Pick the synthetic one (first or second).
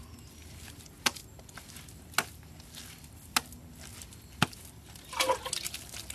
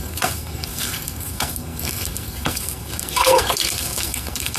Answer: second